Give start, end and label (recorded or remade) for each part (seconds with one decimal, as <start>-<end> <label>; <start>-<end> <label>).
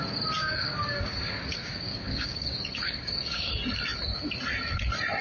0.0-0.4 recorded; 0.4-3.5 remade; 3.5-5.2 recorded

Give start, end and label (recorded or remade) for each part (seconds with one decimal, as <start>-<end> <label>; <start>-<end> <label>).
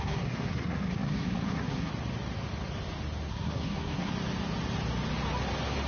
0.0-1.9 remade; 1.9-3.3 recorded; 3.3-4.1 remade; 4.1-5.9 recorded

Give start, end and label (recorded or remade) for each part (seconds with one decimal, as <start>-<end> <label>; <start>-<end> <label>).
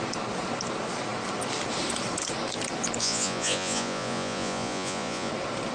0.0-3.0 recorded; 3.0-5.3 remade; 5.3-5.7 recorded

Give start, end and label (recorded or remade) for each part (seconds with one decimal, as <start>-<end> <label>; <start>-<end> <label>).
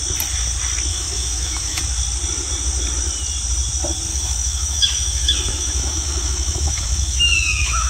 0.0-0.9 recorded; 0.9-1.8 remade; 1.8-4.1 recorded; 4.1-7.9 remade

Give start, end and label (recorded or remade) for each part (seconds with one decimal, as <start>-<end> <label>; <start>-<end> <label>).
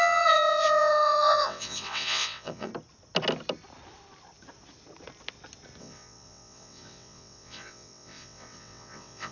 0.0-2.7 remade; 2.7-5.8 recorded; 5.8-9.3 remade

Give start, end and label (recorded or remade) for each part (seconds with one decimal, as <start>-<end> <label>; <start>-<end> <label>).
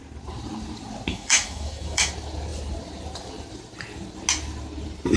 0.0-1.1 recorded; 1.1-2.1 remade; 2.1-5.2 recorded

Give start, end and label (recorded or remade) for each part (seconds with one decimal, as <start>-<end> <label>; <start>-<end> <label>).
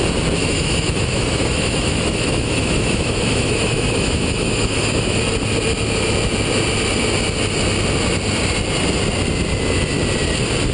0.0-0.4 recorded; 0.4-5.2 remade; 5.2-10.7 recorded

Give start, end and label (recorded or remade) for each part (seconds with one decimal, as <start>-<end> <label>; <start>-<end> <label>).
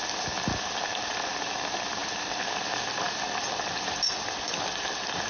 0.0-5.3 recorded